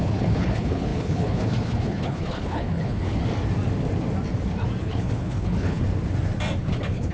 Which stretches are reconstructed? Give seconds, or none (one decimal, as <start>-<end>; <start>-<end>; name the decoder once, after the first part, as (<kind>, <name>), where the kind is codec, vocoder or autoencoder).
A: 0.0-3.2 (codec, HILCodec); 4.8-5.8; 6.6-7.1